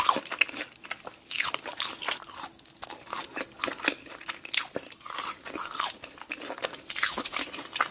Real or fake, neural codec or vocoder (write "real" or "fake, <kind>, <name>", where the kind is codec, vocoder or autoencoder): real